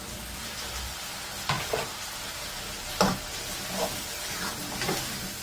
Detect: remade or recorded recorded